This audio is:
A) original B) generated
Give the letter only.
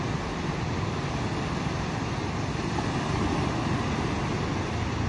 A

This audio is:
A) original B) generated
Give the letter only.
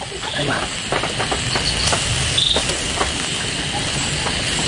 A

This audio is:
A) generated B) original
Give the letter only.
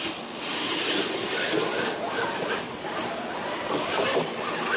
B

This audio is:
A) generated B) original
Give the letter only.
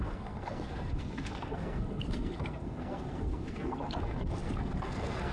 A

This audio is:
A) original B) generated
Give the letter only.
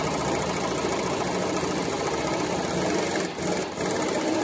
A